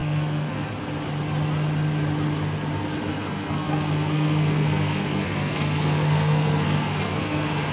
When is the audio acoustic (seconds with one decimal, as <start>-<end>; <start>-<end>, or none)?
0.7-3.1